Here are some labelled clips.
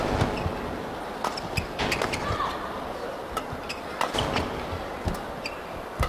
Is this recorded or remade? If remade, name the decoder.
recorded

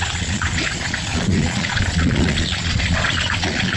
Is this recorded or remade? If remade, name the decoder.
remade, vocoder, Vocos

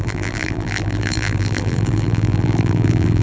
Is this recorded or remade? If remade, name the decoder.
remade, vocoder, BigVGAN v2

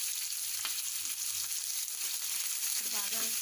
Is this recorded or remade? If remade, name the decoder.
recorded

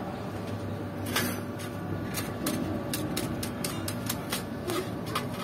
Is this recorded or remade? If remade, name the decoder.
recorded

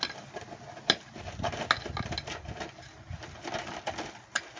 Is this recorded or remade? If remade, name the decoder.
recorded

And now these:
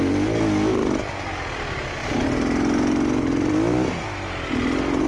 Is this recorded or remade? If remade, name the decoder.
recorded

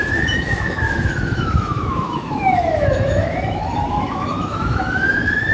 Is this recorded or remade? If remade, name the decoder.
remade, autoencoder, DAC-VAE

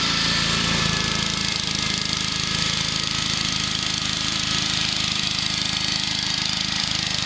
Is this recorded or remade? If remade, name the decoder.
remade, vocoder, BigVGAN v2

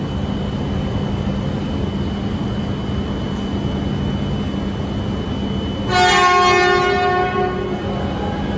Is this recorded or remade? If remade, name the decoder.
recorded